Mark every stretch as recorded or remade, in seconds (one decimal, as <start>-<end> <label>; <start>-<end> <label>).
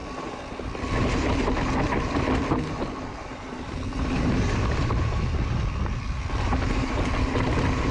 0.0-7.9 recorded